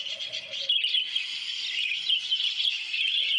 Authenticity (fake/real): real